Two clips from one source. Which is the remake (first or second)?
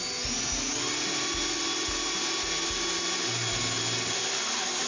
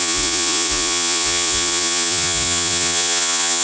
second